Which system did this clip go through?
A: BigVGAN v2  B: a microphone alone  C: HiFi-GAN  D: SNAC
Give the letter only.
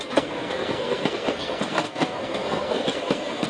D